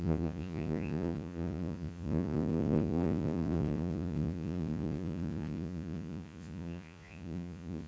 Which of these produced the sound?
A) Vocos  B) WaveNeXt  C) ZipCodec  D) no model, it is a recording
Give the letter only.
A